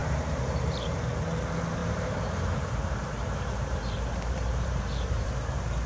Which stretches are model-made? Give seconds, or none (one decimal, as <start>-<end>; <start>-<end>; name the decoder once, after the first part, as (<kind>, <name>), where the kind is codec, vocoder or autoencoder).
0.0-1.1 (vocoder, BigVGAN v2); 1.8-5.3